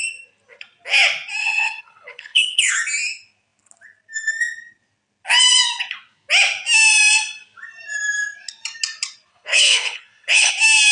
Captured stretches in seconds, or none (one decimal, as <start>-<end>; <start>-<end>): 0.0-1.4; 2.7-9.3; 10.5-10.9